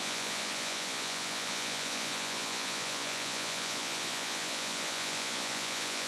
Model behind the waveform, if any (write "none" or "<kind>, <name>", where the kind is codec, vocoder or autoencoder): vocoder, Vocos